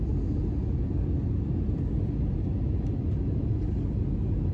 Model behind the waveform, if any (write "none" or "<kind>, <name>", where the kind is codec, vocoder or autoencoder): none